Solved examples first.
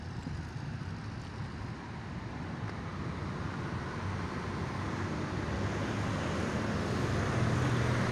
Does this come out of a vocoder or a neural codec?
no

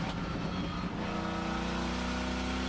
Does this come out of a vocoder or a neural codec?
no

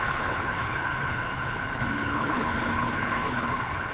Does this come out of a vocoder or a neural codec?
yes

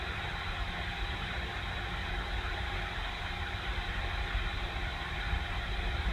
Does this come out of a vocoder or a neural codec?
yes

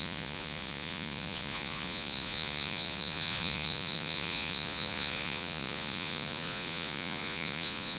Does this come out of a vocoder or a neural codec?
yes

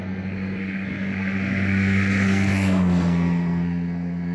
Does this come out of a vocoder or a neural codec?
yes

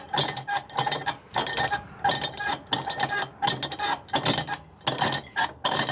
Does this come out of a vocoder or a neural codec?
no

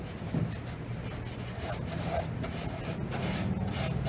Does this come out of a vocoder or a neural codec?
no